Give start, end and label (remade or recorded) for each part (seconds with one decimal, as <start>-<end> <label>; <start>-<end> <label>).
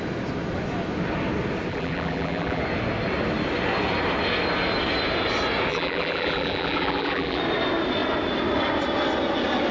0.0-1.7 recorded; 1.7-2.6 remade; 2.6-5.7 recorded; 5.7-7.4 remade; 7.4-9.7 recorded